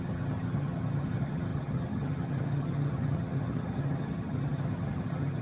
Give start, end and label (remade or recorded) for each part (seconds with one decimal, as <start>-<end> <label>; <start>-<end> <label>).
0.0-5.4 remade